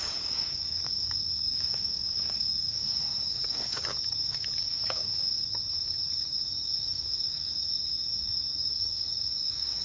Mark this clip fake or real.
fake